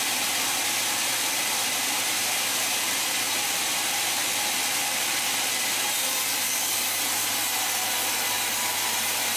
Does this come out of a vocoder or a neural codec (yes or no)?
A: yes